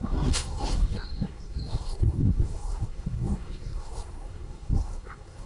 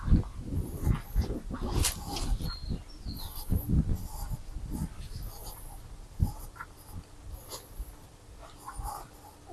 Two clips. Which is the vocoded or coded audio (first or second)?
first